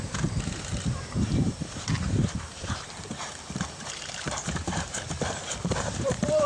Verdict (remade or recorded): remade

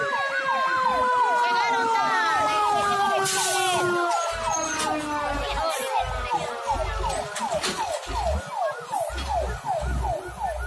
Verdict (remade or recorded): recorded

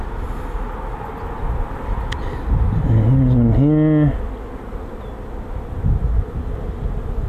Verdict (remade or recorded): recorded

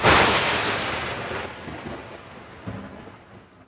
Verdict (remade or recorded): recorded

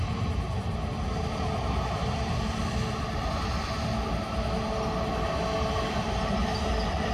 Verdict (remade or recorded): recorded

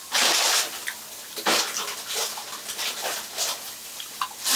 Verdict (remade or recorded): recorded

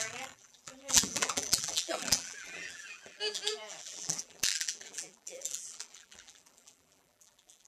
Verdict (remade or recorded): remade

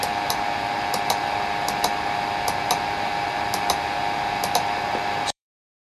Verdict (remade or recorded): remade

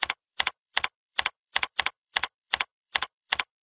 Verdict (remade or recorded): remade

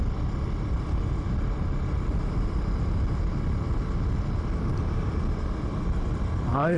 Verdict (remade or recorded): recorded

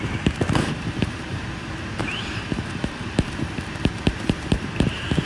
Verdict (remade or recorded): remade